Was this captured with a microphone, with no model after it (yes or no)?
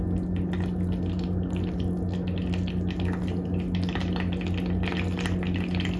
yes